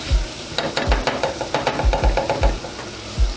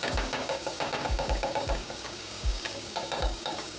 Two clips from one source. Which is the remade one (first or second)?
second